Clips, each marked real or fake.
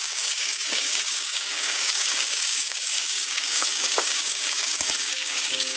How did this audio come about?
fake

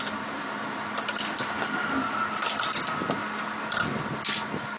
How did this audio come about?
real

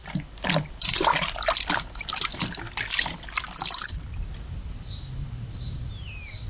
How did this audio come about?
real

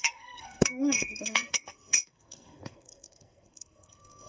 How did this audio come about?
fake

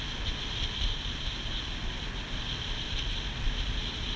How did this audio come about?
real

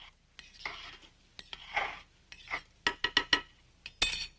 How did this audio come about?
real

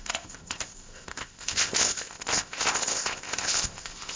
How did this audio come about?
fake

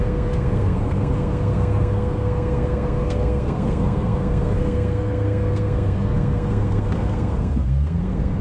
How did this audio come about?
fake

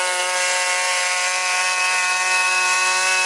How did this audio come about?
real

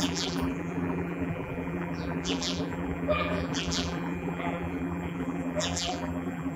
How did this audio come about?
fake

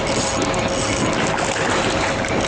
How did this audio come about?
real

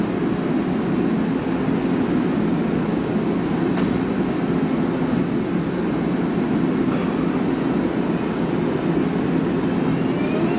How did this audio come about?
real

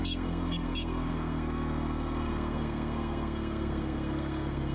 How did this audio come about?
fake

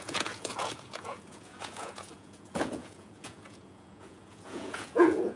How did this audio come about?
fake